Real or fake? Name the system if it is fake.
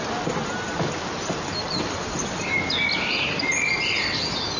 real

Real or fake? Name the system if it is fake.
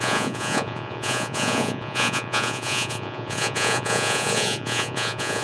fake, vocoder, Vocos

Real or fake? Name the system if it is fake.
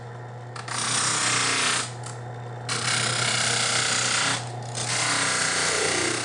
real